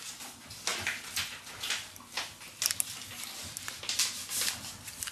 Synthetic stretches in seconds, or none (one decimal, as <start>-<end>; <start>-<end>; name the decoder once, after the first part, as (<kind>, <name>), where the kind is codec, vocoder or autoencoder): none